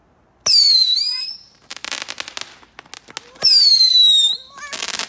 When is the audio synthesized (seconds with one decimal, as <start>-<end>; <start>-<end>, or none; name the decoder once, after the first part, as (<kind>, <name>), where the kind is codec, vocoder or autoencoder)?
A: 0.6-1.8 (vocoder, BigVGAN v2)